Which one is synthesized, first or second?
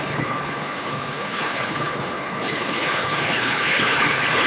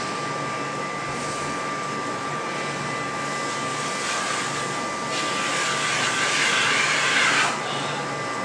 first